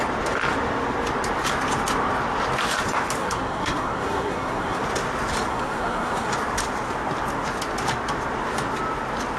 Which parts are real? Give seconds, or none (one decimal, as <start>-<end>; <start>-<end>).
0.0-3.2; 4.8-5.5; 6.3-9.4